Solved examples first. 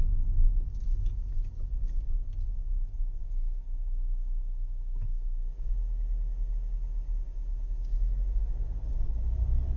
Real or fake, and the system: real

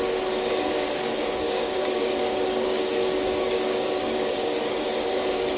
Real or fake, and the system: fake, codec, DAC